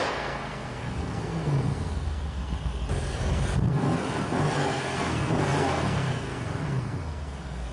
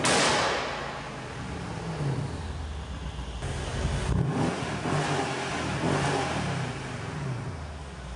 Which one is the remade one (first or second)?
first